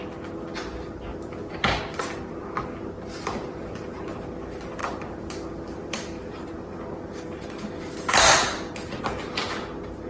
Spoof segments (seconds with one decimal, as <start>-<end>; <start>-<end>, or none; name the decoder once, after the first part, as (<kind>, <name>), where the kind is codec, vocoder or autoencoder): 1.1-1.8 (vocoder, BigVGAN v2); 4.8-9.0